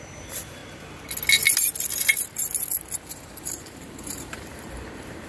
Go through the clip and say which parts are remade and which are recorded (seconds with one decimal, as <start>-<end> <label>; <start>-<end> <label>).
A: 0.0-0.6 remade; 0.6-3.4 recorded; 3.4-5.3 remade